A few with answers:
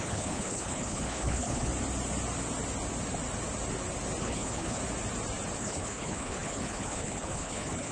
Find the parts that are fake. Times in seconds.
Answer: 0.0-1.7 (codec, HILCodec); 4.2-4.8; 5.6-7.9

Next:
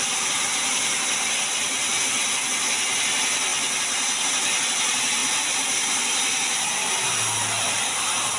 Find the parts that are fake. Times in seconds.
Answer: none